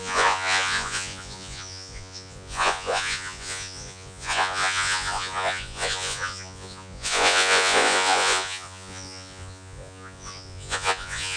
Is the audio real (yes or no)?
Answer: no